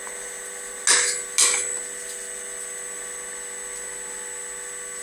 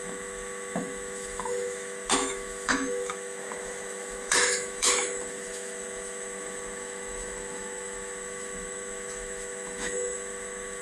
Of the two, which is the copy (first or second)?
second